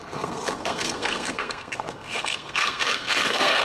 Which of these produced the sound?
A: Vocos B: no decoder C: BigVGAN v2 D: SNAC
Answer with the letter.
D